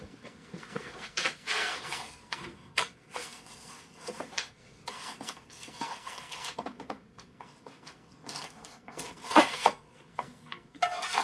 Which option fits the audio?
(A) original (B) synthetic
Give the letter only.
B